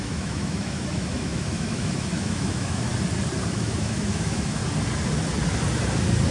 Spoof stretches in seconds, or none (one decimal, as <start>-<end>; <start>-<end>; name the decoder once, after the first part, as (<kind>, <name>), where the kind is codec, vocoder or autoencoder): 0.0-2.9 (autoencoder, DAC-VAE); 3.5-4.6

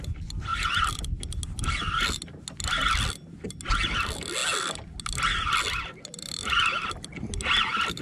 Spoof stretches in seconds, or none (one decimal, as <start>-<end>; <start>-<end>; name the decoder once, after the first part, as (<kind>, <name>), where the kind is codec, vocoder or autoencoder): none

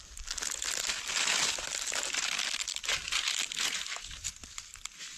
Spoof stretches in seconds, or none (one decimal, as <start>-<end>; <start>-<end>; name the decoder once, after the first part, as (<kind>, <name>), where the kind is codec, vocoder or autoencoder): none

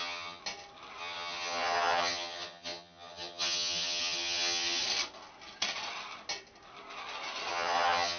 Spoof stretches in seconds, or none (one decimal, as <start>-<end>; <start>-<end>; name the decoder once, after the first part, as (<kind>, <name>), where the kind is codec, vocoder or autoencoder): 0.0-0.4 (vocoder, HiFi-GAN); 1.0-4.8; 7.5-8.2